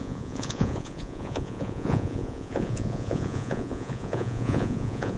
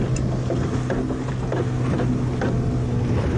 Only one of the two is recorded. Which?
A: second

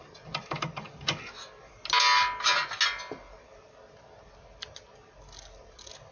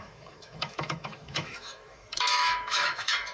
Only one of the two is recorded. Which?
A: first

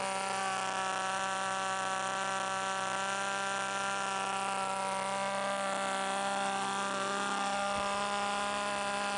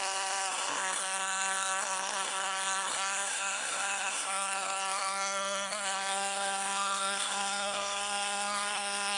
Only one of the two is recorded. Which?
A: first